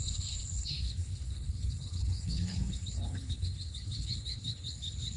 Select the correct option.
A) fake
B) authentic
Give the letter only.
A